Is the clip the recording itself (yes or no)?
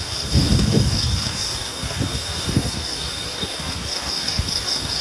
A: no